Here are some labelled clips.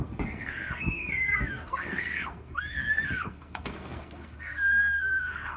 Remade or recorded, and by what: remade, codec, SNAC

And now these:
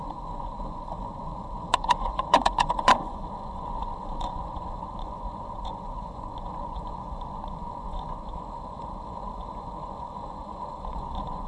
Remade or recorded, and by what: remade, vocoder, Vocos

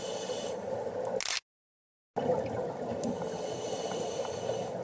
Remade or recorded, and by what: recorded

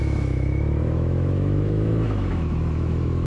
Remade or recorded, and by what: remade, autoencoder, DAC-VAE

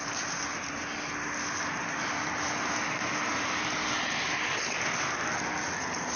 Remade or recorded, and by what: recorded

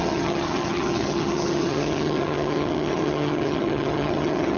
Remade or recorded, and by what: remade, vocoder, HiFi-GAN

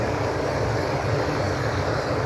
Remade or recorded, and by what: remade, codec, DAC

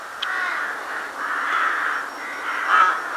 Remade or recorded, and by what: recorded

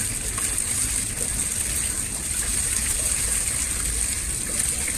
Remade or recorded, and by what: recorded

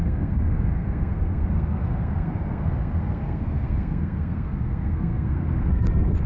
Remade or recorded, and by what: remade, codec, SNAC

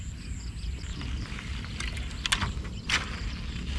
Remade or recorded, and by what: recorded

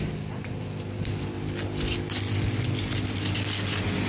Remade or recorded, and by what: recorded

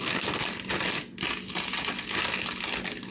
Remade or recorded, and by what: recorded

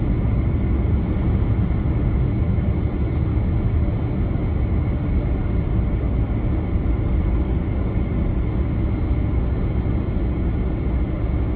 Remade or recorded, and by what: recorded